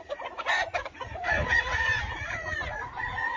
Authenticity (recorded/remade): remade